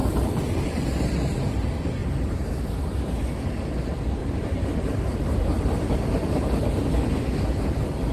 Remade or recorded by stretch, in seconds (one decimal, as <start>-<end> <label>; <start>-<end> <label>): 0.0-0.9 remade; 0.9-2.0 recorded; 2.0-2.5 remade; 2.5-4.2 recorded; 4.2-6.9 remade; 6.9-8.1 recorded